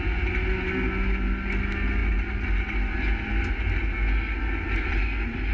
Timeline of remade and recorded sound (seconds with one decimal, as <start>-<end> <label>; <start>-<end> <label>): 0.0-5.5 recorded